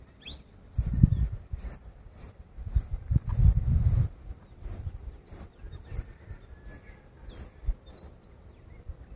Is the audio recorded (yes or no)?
yes